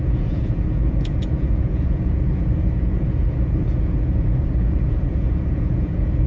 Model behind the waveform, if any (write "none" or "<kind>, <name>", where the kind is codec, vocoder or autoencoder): vocoder, Vocos